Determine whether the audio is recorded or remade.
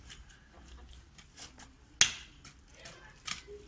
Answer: recorded